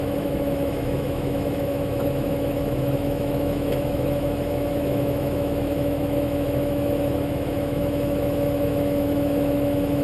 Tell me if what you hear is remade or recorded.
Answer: remade